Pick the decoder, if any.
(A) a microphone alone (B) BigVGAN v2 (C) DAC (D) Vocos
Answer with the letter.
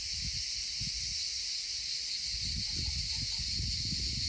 A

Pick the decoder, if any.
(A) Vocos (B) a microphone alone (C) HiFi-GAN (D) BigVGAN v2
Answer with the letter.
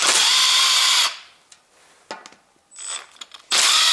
B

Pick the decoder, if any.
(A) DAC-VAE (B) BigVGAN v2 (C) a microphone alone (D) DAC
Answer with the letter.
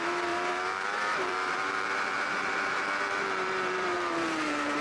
B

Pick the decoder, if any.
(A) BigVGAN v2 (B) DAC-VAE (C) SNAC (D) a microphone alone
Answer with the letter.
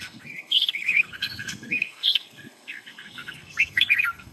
C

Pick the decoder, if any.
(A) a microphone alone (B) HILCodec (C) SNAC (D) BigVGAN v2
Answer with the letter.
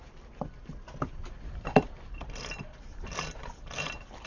A